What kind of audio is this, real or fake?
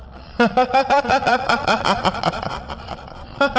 fake